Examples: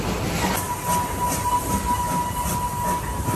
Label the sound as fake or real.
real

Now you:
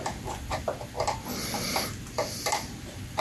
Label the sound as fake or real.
real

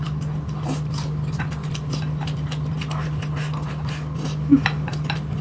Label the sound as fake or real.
real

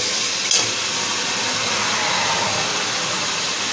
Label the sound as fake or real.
real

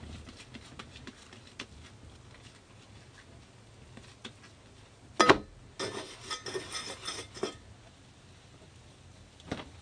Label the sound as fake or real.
real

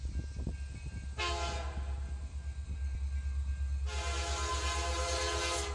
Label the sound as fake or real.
real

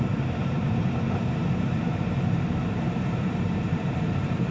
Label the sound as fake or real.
fake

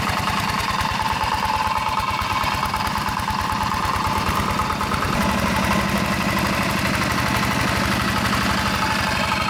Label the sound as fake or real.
real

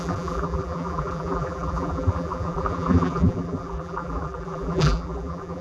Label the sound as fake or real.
fake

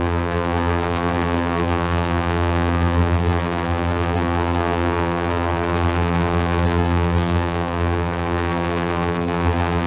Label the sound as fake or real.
fake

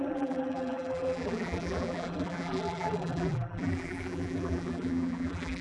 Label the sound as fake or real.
fake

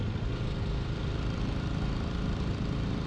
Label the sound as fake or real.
fake